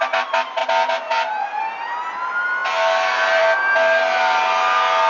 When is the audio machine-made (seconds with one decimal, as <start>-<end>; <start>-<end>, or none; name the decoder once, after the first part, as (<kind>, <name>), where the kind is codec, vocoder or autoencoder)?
none